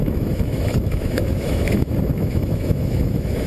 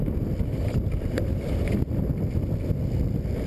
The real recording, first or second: second